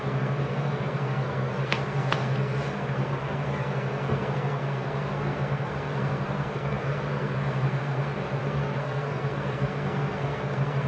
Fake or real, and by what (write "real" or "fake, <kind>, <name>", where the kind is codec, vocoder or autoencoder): fake, codec, SNAC